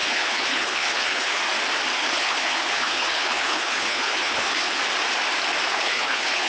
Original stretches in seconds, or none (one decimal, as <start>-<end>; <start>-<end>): 1.4-2.0; 4.8-5.7